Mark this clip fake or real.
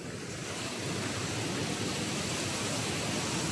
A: real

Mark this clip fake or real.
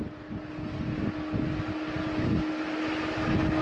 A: real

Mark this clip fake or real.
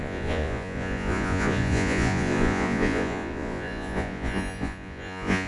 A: fake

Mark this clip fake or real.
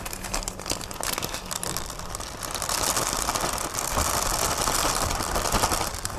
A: real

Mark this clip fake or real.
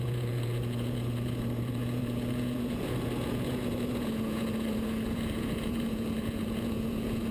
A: fake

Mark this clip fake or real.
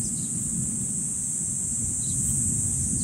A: real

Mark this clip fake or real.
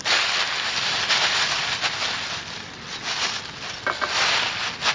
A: real